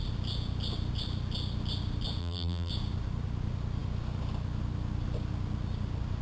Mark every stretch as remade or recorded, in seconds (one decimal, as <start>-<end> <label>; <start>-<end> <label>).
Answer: 0.0-2.2 recorded; 2.2-2.7 remade; 2.7-6.2 recorded